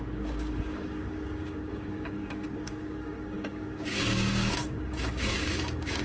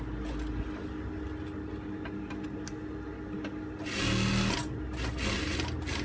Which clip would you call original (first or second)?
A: second